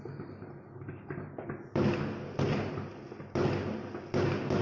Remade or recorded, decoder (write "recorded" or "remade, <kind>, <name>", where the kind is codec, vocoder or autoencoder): recorded